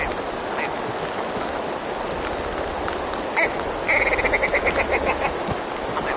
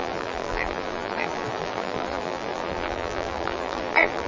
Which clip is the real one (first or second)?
first